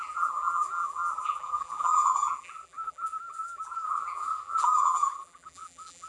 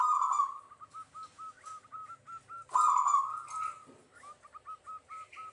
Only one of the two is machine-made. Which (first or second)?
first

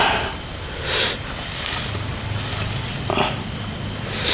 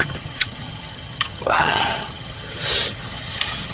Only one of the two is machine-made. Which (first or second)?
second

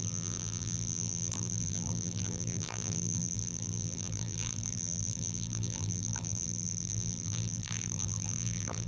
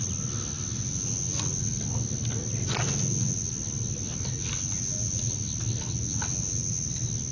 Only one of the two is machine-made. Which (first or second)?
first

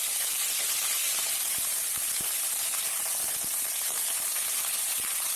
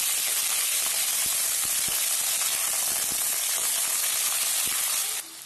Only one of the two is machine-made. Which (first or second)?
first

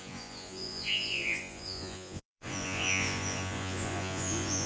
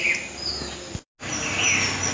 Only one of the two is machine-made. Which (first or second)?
first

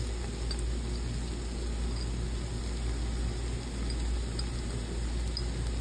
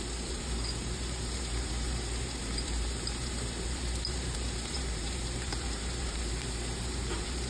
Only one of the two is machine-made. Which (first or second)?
second